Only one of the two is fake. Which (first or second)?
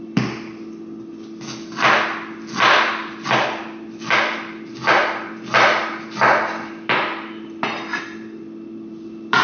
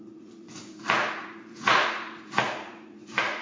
second